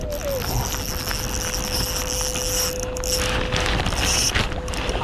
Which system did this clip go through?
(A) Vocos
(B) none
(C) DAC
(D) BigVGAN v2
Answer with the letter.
B